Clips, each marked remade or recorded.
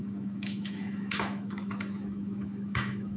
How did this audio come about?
remade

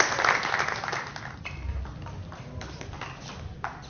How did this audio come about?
recorded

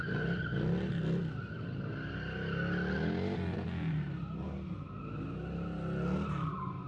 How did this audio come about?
recorded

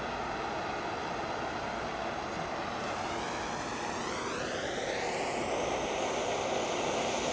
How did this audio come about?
recorded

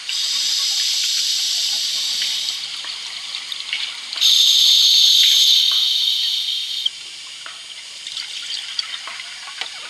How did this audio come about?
recorded